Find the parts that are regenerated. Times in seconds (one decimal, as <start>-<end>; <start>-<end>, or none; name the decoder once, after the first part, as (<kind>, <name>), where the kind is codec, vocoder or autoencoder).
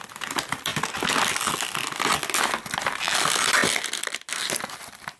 none